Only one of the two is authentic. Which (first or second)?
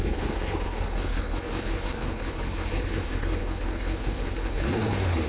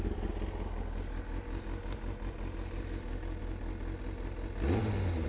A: second